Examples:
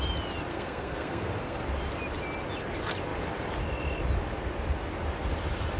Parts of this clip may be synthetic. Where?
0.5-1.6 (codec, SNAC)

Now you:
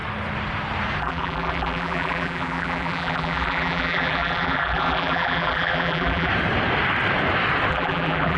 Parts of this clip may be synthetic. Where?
1.0-6.3 (vocoder, BigVGAN v2); 7.7-8.4

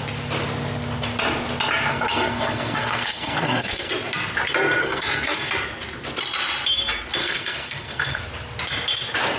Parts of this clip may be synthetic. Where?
1.9-3.9 (codec, SNAC); 4.8-5.5; 7.2-8.2